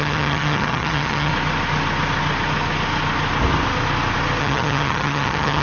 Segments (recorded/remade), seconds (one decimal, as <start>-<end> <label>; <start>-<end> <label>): 0.0-1.3 remade; 1.3-4.4 recorded; 4.4-5.6 remade